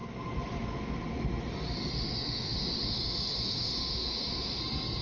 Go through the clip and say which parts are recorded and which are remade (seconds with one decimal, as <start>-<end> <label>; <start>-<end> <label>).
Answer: 0.0-1.8 recorded; 1.8-4.6 remade; 4.6-5.0 recorded